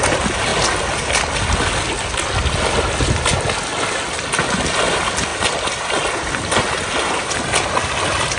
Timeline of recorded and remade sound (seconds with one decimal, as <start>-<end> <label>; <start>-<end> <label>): 0.0-8.4 recorded